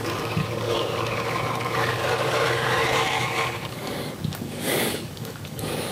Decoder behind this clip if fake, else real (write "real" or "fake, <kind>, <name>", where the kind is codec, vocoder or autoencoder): fake, codec, DAC